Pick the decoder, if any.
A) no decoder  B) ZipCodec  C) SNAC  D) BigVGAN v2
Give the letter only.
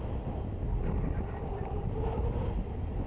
A